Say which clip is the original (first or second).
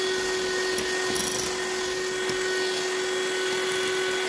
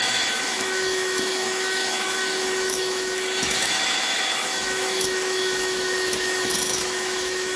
first